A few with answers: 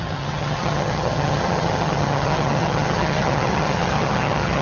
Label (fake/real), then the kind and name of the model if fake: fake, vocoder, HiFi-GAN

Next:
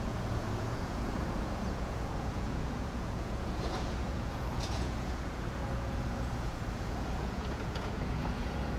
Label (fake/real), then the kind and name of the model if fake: fake, vocoder, Vocos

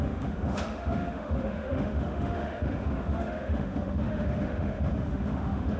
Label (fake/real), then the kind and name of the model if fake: fake, autoencoder, DAC-VAE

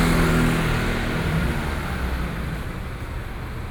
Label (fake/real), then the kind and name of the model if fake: real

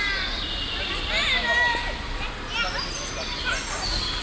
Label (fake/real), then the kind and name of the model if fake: real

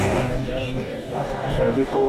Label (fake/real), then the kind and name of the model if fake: fake, codec, DAC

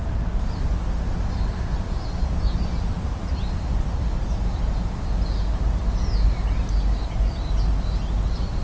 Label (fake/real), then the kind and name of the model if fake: real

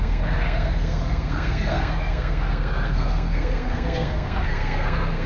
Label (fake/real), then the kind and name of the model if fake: fake, codec, SNAC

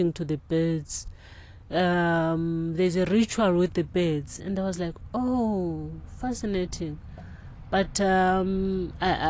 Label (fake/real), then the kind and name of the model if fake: real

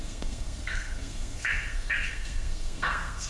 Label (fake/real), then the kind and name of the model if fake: fake, codec, SNAC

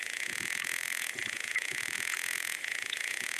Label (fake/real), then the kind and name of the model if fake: fake, vocoder, Vocos